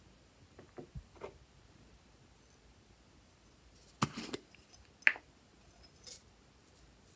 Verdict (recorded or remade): recorded